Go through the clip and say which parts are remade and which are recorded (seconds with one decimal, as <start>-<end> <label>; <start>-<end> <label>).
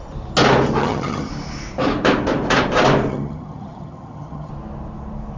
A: 0.0-0.8 recorded; 0.8-1.3 remade; 1.3-3.1 recorded; 3.1-4.5 remade; 4.5-5.4 recorded